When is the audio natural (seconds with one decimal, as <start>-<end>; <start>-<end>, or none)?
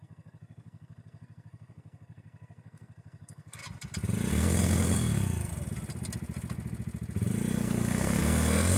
3.6-4.3; 5.5-7.5